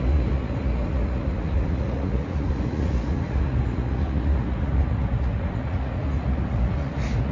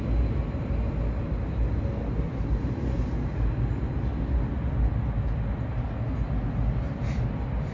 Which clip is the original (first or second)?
second